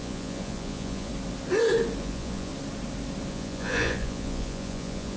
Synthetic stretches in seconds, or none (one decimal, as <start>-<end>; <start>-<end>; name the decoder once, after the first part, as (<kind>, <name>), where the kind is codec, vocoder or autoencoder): 0.0-1.1 (vocoder, Vocos); 2.0-2.5; 3.3-5.2